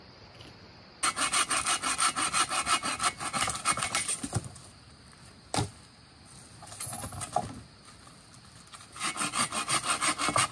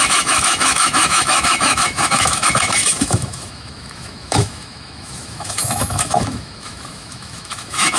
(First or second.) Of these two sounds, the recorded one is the first